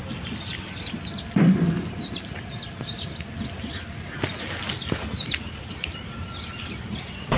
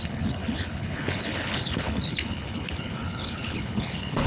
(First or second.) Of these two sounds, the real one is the first